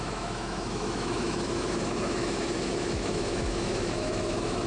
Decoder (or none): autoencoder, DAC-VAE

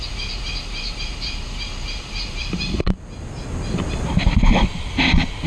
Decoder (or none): none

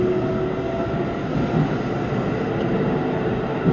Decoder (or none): none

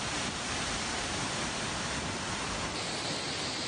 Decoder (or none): none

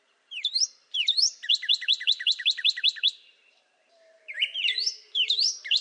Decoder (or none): vocoder, BigVGAN v2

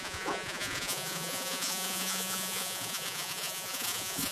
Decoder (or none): vocoder, Vocos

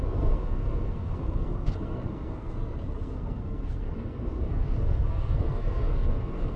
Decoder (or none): codec, SNAC